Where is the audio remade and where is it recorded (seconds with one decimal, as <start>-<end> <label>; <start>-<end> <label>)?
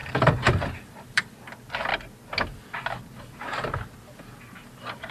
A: 0.0-1.3 remade; 1.3-5.1 recorded